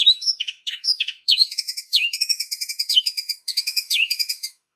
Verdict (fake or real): fake